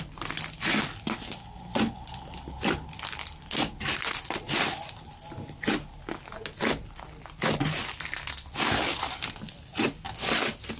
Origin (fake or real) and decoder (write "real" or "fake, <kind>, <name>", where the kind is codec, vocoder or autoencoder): real